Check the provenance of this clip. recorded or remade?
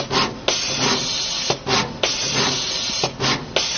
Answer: recorded